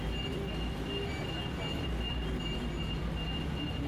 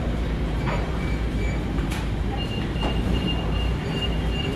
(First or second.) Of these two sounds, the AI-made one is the second